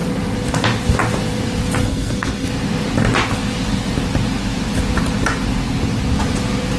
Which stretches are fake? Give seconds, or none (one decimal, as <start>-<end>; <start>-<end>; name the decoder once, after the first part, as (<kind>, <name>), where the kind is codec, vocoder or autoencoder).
1.8-2.5 (codec, SNAC)